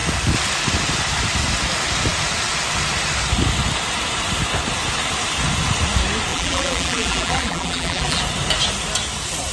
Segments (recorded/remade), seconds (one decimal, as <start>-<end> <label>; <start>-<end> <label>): 0.0-6.3 recorded; 6.3-8.2 remade; 8.2-9.5 recorded